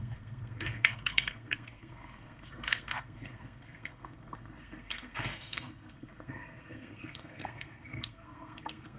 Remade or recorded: remade